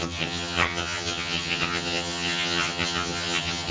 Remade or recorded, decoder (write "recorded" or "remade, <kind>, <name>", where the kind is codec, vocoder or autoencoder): remade, vocoder, HiFi-GAN